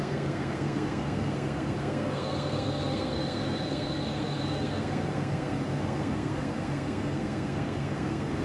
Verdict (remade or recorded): remade